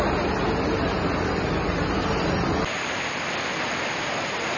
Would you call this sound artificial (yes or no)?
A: no